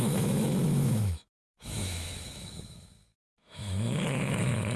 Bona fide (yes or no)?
no